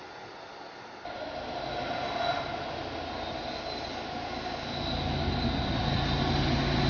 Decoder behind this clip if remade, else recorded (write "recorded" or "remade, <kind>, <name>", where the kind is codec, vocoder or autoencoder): recorded